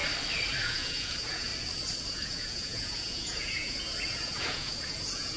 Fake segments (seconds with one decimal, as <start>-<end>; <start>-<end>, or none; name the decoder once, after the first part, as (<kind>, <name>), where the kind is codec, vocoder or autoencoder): 0.6-1.5 (vocoder, Vocos); 2.1-5.4